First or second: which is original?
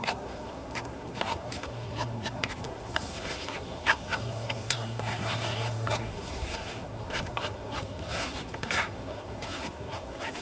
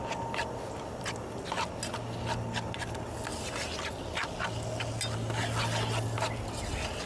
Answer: second